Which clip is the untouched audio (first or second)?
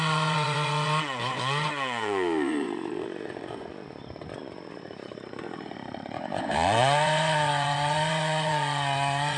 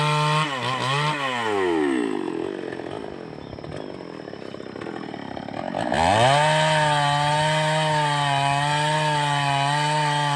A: second